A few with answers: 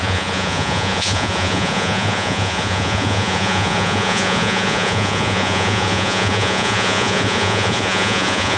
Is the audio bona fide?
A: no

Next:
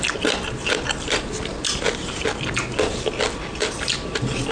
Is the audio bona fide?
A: yes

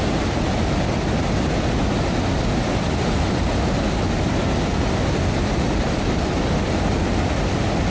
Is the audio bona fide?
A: yes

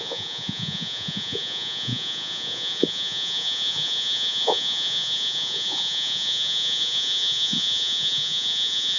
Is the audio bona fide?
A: no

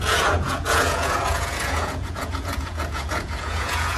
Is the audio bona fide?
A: no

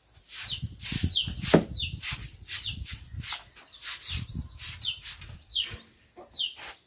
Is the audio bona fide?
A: yes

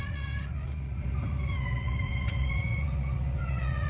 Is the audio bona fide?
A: no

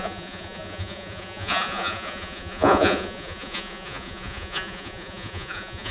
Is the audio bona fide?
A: no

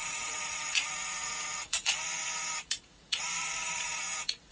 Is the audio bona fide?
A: no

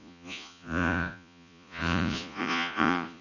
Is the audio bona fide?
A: no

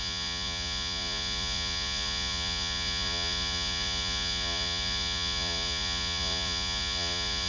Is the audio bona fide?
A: no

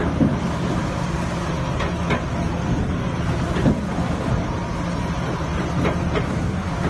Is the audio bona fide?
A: yes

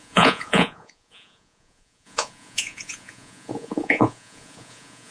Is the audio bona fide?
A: no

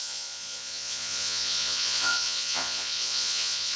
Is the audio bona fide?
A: no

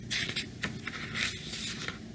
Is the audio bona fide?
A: yes